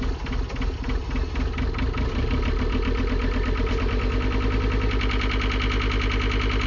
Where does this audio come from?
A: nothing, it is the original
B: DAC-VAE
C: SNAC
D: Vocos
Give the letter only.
A